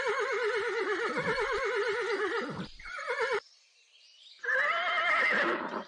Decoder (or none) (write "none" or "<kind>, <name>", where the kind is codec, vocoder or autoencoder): vocoder, BigVGAN v2